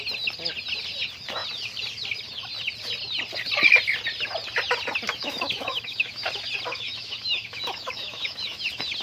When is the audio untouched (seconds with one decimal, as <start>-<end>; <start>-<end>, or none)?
0.0-5.2; 6.1-6.7; 8.6-9.0